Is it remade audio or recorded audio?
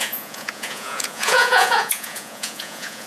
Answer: remade